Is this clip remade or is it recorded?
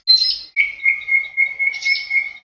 recorded